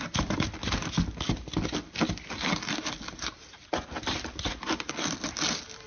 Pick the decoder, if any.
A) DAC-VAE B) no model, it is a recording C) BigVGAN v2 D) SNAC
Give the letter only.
B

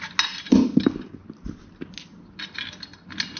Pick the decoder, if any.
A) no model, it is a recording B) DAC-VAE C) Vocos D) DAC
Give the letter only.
A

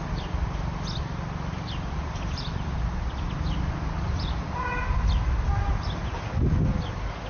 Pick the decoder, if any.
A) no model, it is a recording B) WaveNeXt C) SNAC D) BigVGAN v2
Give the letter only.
A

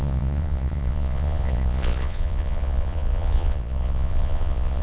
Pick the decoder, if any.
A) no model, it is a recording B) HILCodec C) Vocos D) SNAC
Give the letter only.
C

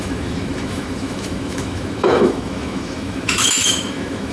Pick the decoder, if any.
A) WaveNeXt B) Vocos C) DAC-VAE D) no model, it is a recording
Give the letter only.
C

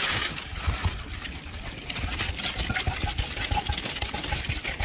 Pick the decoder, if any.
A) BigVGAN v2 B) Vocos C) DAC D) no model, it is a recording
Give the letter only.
A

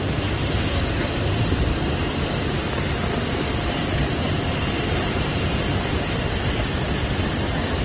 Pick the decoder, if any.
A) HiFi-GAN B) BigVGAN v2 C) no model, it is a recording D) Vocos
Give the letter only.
C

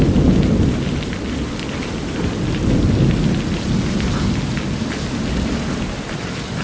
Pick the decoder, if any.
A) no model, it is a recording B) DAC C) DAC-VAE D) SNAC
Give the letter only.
A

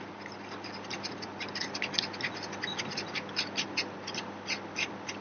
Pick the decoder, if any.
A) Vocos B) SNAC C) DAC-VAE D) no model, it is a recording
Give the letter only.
D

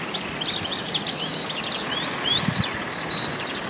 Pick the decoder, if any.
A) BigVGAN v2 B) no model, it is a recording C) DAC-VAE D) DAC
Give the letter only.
B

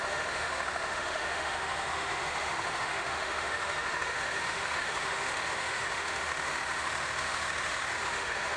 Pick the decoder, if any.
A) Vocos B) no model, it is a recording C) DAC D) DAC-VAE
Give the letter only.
D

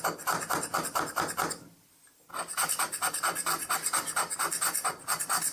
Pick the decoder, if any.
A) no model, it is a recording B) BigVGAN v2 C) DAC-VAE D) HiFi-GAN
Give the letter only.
A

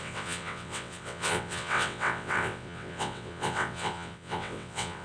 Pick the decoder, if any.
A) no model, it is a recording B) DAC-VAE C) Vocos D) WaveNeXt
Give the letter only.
D